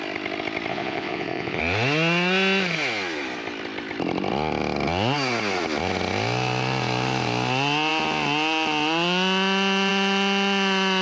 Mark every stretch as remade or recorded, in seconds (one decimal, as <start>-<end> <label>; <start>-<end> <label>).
0.0-0.7 recorded; 0.7-1.6 remade; 1.6-11.0 recorded